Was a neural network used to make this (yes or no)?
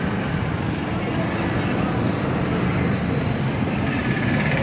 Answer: no